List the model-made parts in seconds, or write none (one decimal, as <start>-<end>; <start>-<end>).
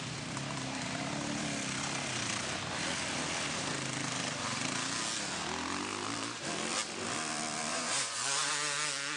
7.7-8.5